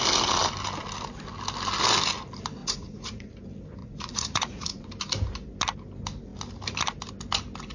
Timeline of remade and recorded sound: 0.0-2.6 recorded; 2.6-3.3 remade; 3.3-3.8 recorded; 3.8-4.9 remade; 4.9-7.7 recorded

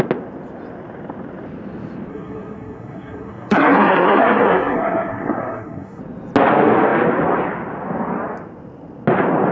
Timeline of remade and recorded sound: 0.0-2.1 recorded; 2.1-6.0 remade; 6.0-9.5 recorded

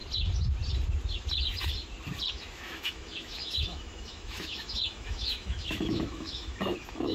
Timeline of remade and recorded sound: 0.0-2.3 recorded; 2.3-7.1 remade

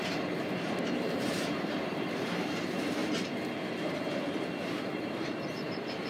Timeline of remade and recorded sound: 0.0-6.1 remade

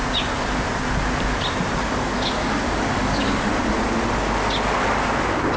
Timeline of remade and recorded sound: 0.0-1.8 recorded; 1.8-3.5 remade; 3.5-5.6 recorded